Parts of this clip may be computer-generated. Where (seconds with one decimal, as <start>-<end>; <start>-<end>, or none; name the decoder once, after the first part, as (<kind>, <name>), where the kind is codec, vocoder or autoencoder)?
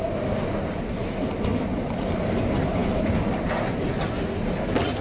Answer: none